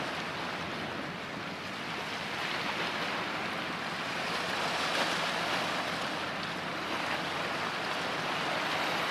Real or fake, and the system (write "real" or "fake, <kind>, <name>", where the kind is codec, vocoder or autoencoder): real